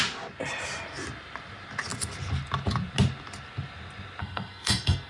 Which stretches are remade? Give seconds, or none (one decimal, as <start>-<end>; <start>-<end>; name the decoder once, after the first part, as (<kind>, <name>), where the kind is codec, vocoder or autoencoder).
4.2-5.1 (codec, SNAC)